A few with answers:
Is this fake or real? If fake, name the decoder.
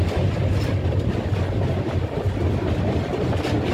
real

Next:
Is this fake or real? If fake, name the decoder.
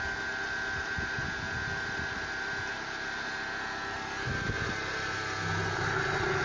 real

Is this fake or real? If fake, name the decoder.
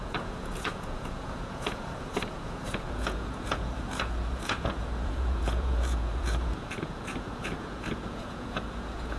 fake, vocoder, Vocos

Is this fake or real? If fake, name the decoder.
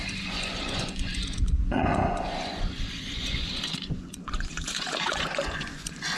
fake, vocoder, Vocos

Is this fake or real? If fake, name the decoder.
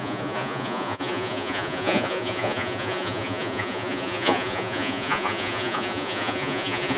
fake, vocoder, Vocos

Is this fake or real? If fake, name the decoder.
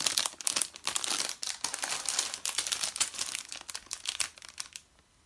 real